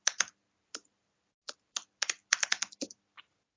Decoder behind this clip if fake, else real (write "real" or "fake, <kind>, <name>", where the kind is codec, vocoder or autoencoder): real